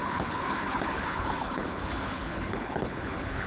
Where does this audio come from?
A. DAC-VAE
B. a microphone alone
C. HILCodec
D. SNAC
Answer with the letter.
C